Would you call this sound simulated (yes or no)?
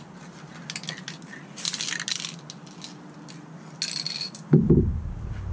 no